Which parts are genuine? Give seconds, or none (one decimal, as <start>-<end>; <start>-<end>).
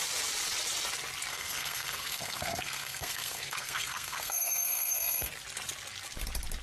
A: 0.0-1.3; 5.3-6.6